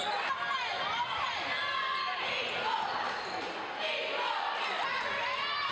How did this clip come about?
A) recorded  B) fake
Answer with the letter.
A